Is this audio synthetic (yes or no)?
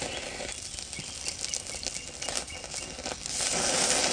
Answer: no